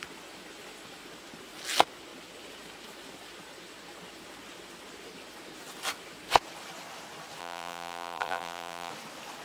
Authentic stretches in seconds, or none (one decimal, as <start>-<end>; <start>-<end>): 0.0-7.4; 8.9-9.4